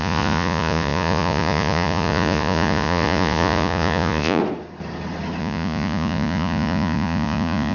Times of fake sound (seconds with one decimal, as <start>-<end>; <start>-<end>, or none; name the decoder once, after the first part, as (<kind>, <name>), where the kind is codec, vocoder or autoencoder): 0.0-4.4 (vocoder, Vocos); 5.4-7.7